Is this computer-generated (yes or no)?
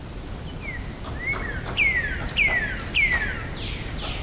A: no